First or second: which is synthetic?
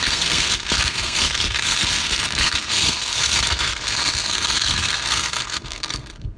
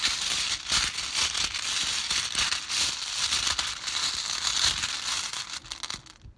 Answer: first